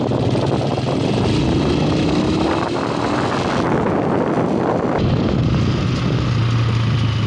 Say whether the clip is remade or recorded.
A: recorded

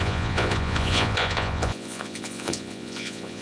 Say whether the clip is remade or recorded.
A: remade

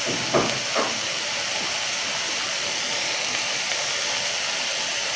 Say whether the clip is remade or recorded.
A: recorded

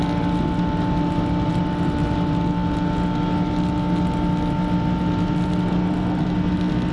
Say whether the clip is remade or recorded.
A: recorded